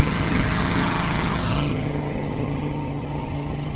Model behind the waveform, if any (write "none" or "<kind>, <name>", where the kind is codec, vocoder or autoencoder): vocoder, HiFi-GAN